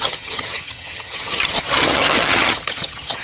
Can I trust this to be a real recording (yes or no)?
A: no